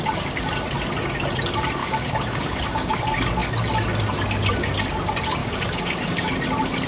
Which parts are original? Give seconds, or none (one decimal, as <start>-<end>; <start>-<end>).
0.0-1.8; 2.9-5.4; 6.3-6.9